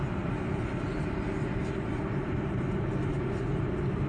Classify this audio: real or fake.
fake